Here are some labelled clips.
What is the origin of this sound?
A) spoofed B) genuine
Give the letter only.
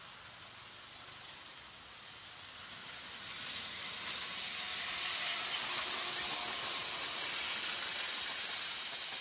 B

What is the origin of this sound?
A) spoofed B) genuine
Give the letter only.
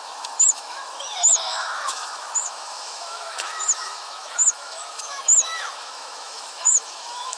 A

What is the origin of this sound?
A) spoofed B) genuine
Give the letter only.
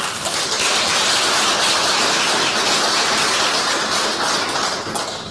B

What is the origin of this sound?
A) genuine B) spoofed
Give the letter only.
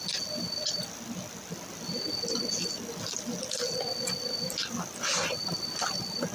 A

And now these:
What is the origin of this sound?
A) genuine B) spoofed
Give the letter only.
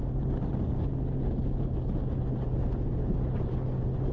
A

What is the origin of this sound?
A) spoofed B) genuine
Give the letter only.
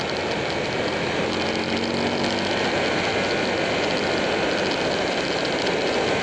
B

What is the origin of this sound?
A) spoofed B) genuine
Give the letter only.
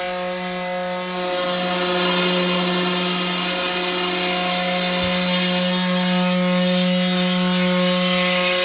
B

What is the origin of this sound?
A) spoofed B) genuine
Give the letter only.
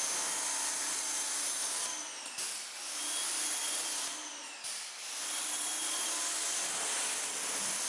B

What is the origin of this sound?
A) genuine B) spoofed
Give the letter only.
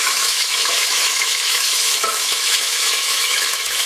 B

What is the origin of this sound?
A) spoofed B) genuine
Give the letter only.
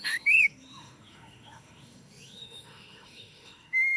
A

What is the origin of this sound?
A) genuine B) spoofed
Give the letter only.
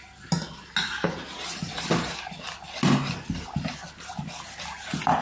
A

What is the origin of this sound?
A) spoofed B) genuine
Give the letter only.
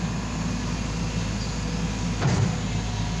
B